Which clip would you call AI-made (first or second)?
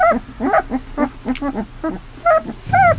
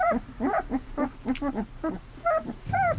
second